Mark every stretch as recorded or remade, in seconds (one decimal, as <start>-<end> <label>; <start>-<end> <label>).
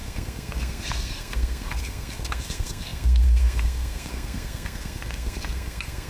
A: 0.0-6.1 remade